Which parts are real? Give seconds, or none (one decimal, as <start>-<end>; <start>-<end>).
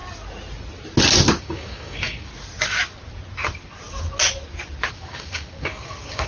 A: 0.0-1.4; 2.3-4.9